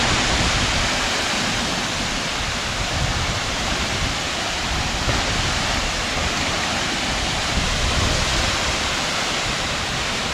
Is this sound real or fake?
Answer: fake